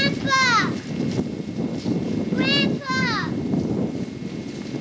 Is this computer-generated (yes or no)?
no